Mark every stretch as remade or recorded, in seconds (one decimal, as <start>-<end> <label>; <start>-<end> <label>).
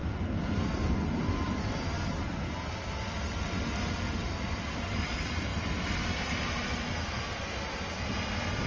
0.0-8.7 recorded